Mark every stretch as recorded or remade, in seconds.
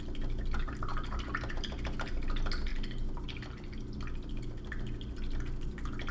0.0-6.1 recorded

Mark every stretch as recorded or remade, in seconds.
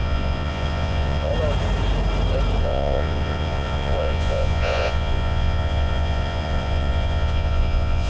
0.0-1.3 remade; 1.3-2.6 recorded; 2.6-8.1 remade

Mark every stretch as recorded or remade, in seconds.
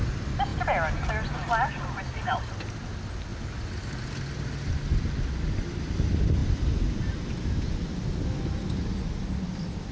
0.0-9.9 recorded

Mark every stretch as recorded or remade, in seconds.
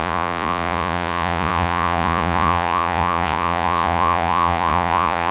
0.0-5.3 remade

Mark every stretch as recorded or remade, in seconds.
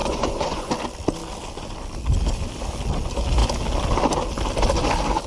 0.0-0.7 remade; 0.7-5.3 recorded